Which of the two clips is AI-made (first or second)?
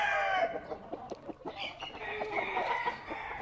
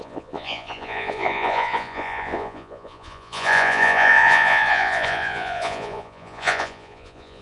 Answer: second